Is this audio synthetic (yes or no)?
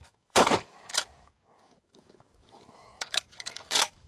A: yes